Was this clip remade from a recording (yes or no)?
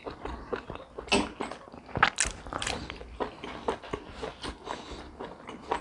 no